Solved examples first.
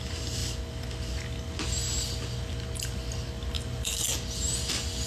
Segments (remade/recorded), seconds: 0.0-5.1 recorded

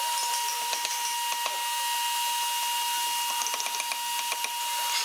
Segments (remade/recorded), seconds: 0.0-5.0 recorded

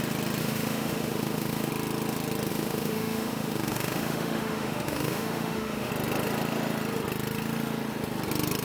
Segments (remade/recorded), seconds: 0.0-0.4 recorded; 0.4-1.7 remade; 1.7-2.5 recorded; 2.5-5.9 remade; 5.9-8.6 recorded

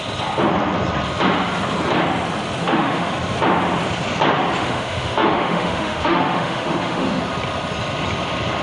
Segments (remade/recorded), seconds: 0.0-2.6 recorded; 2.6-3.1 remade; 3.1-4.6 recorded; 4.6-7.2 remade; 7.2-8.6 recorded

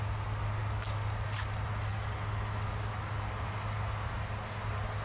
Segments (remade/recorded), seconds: 0.0-5.0 recorded

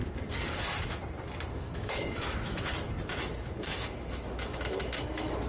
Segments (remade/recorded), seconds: 0.0-1.5 recorded; 1.5-2.7 remade; 2.7-3.4 recorded; 3.4-5.5 remade